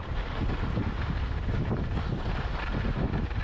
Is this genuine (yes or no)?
yes